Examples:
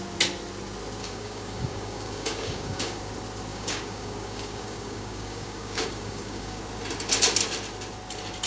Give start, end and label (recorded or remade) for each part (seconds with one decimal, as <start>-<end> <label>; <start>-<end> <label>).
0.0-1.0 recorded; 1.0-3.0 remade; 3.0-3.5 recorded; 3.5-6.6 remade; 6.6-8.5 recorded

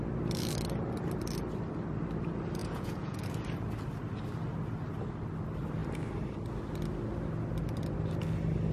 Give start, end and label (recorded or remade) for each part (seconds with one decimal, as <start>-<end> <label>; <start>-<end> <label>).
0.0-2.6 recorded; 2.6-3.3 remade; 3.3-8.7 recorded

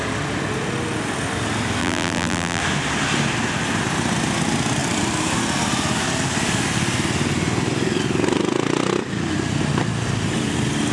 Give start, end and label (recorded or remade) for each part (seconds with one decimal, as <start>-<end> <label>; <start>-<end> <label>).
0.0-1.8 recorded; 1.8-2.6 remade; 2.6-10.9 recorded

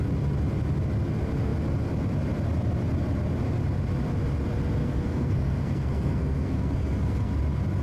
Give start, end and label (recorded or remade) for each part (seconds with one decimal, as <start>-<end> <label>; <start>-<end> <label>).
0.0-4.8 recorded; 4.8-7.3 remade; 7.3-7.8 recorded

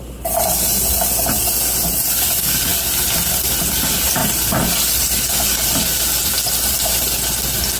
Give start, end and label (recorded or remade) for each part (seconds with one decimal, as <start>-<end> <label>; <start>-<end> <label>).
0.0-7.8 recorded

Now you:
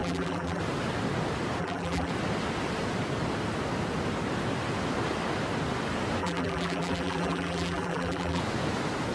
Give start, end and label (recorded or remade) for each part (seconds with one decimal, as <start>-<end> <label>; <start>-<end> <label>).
0.0-0.6 remade; 0.6-1.6 recorded; 1.6-2.1 remade; 2.1-6.2 recorded; 6.2-8.4 remade; 8.4-9.1 recorded

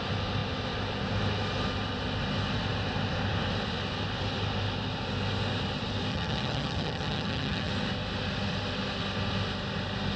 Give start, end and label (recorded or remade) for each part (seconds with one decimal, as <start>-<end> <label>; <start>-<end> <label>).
0.0-6.1 recorded; 6.1-7.7 remade; 7.7-10.2 recorded